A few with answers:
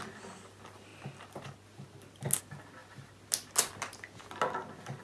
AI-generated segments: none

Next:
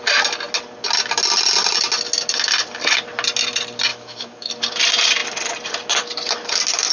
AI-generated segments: 3.9-4.5 (autoencoder, DAC-VAE)